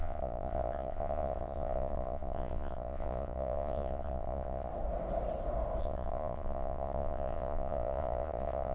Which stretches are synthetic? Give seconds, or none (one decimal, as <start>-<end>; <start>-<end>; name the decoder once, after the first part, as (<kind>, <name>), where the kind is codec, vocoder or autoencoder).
0.0-4.7 (vocoder, Vocos); 5.8-8.7